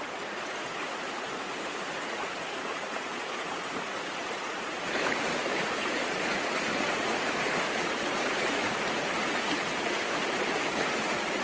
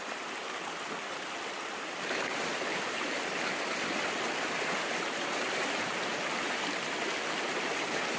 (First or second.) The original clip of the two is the second